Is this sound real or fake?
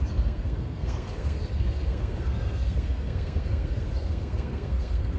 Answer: fake